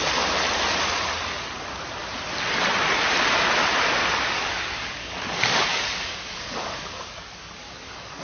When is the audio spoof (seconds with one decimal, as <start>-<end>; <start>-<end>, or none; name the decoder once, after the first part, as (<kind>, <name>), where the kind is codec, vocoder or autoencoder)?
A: 4.0-8.2 (codec, DAC)